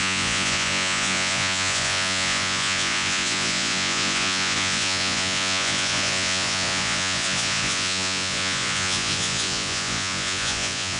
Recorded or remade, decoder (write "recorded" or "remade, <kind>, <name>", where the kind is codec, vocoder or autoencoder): remade, vocoder, Vocos